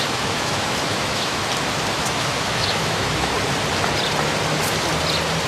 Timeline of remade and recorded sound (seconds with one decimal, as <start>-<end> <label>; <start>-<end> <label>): 0.0-1.4 remade; 1.4-1.9 recorded; 1.9-3.3 remade; 3.3-5.5 recorded